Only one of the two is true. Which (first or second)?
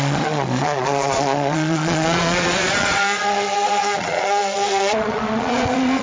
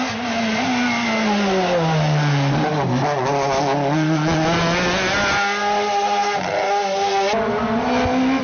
second